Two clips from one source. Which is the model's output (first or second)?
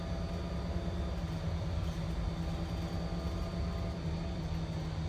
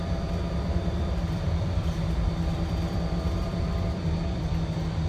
second